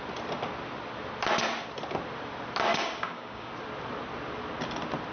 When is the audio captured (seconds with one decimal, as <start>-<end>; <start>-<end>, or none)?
0.0-2.7; 3.5-5.1